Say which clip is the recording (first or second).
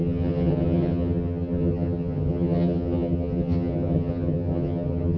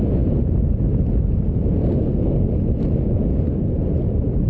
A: second